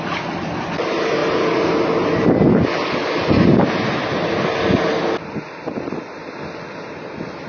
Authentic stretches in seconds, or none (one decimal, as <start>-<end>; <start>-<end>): 0.0-7.5